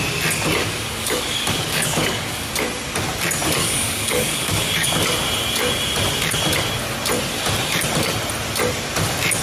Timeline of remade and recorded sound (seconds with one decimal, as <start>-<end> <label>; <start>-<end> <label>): 0.0-0.6 recorded; 0.6-2.5 remade; 2.5-3.6 recorded; 3.6-4.9 remade; 4.9-9.4 recorded